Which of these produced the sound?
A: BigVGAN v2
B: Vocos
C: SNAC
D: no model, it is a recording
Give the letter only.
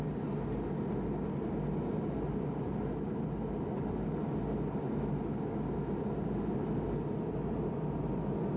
D